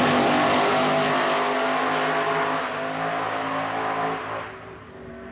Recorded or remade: recorded